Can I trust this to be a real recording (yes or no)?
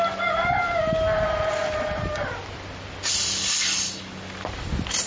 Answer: yes